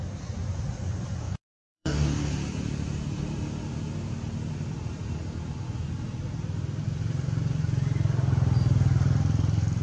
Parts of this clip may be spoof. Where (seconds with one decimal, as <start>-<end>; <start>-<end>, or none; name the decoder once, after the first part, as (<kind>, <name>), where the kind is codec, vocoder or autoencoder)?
1.2-2.3 (codec, DAC)